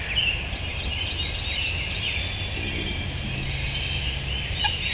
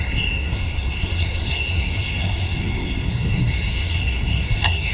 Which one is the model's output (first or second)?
second